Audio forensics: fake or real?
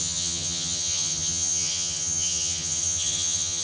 fake